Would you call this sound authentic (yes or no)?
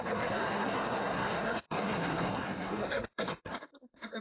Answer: no